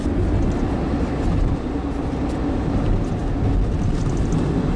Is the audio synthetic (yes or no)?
no